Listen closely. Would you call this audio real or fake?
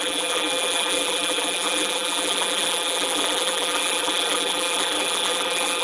fake